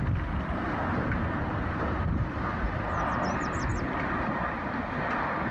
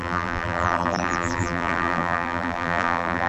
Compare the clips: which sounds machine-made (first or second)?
second